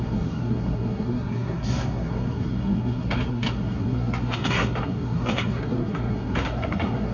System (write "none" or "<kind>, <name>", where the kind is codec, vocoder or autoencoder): codec, SNAC